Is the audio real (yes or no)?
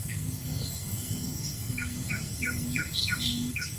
no